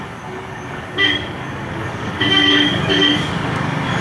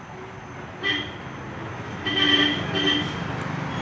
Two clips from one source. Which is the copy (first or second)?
first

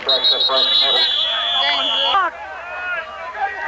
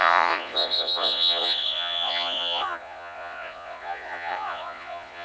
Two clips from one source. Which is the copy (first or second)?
second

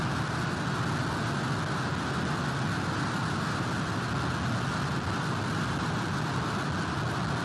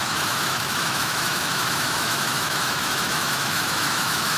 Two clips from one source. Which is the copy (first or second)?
second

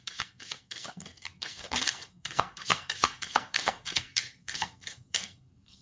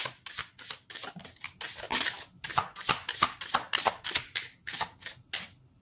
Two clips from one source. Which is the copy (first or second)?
first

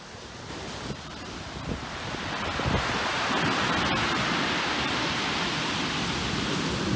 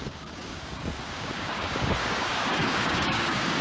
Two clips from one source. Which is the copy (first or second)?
second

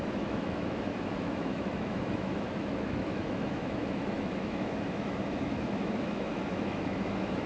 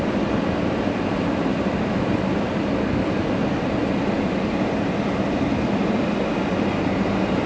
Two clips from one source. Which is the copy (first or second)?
first